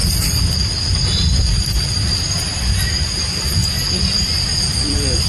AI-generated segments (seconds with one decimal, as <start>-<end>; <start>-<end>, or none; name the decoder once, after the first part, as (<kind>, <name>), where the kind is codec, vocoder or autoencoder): 0.0-3.2 (vocoder, BigVGAN v2); 3.6-4.6